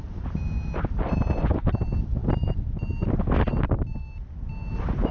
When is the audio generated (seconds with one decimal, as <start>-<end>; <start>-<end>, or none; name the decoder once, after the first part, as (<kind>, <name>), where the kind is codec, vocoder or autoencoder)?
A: none

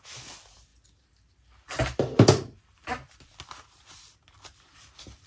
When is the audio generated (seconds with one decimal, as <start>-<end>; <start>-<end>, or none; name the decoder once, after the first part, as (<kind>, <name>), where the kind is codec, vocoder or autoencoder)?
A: none

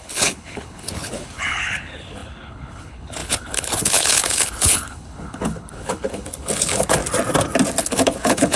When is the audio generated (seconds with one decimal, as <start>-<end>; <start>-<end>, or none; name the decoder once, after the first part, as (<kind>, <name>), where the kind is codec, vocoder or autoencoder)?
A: 0.0-7.0 (codec, HILCodec); 7.8-8.6

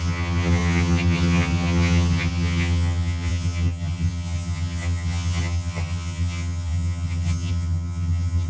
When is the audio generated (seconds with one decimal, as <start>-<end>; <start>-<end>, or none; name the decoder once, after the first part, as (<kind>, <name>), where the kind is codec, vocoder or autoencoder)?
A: 0.0-8.5 (vocoder, HiFi-GAN)

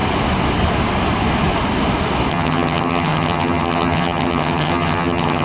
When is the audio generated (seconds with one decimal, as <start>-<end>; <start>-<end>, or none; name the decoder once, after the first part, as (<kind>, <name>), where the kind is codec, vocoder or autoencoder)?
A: 2.3-5.4 (vocoder, HiFi-GAN)